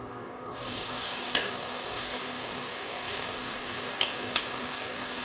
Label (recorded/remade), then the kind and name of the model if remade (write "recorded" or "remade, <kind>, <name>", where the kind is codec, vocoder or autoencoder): remade, codec, DAC